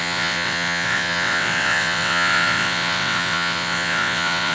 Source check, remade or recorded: remade